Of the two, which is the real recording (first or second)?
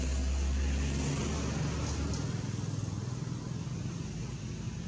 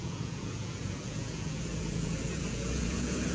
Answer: first